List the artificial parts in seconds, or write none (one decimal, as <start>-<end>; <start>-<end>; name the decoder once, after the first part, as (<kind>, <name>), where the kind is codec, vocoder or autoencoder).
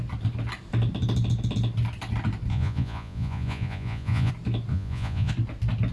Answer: 2.5-4.3 (vocoder, Vocos); 4.7-5.3